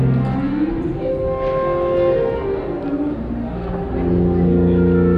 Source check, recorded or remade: recorded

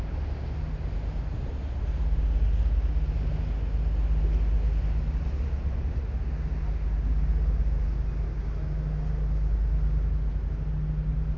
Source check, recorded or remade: recorded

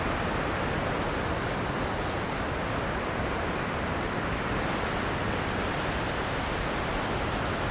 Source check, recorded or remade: recorded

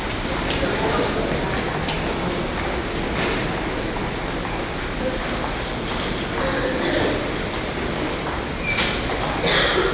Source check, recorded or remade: recorded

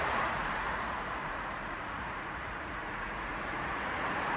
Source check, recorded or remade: remade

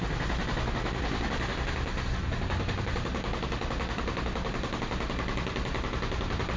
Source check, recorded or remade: recorded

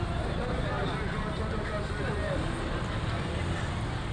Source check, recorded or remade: recorded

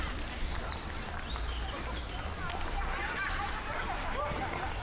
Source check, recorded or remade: recorded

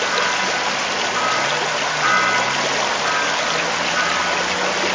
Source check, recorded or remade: recorded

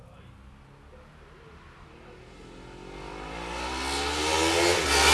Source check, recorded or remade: recorded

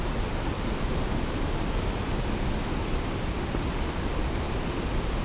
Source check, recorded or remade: recorded